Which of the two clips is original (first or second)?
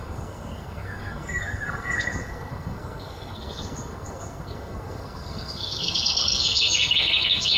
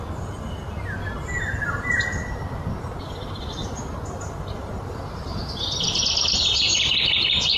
second